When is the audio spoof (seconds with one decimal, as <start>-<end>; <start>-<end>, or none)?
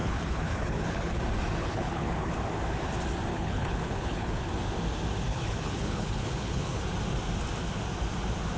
0.0-1.2; 1.6-2.3; 3.3-4.5; 5.3-6.8